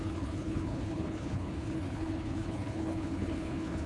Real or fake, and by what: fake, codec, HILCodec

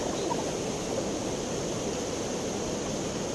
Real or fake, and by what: real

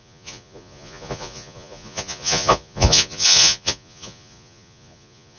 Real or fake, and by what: fake, vocoder, Vocos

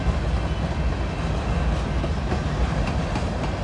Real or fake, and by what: real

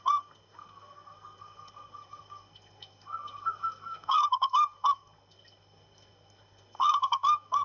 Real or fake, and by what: fake, codec, SNAC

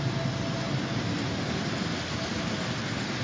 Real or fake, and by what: real